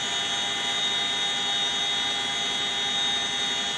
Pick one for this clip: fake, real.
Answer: real